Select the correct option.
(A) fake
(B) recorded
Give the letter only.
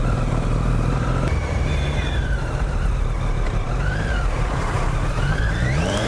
A